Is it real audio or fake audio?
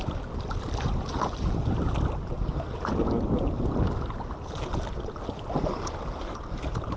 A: real